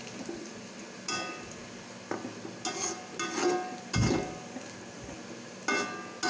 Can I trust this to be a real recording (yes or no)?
yes